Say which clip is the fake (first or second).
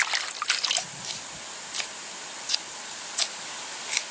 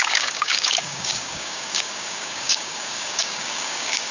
second